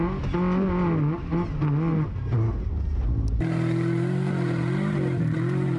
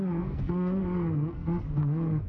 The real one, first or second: first